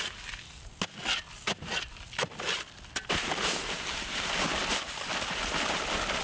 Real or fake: real